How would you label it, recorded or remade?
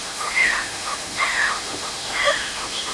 remade